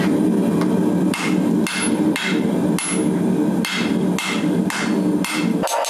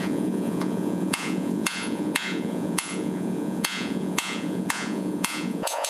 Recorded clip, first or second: first